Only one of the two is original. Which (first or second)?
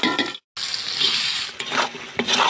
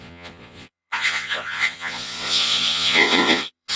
first